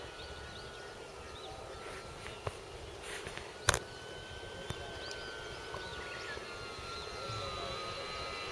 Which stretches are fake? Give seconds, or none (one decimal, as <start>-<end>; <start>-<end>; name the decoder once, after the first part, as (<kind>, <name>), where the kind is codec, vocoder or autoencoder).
none